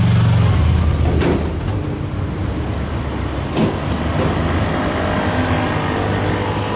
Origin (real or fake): real